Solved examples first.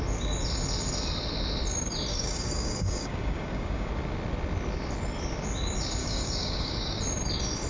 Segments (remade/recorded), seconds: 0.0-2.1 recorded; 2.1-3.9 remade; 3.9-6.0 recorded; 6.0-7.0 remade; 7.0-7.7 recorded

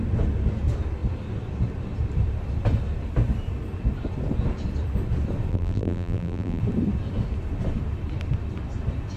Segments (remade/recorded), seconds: 0.0-5.5 recorded; 5.5-6.6 remade; 6.6-9.2 recorded

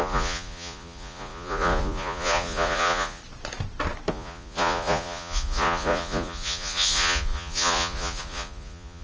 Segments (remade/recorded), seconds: 0.0-3.2 remade; 3.2-4.1 recorded; 4.1-9.0 remade